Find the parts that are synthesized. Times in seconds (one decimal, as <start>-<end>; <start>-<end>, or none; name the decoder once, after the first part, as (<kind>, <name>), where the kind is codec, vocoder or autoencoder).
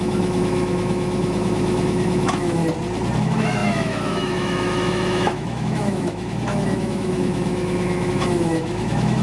0.0-2.6 (autoencoder, DAC-VAE); 3.2-9.2